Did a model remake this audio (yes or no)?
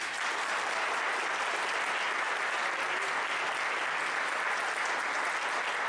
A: no